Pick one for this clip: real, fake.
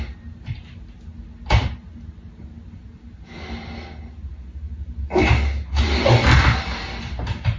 real